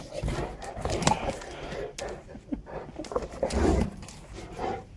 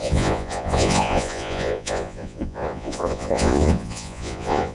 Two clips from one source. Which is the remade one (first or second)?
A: second